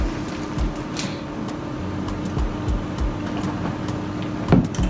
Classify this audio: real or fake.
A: real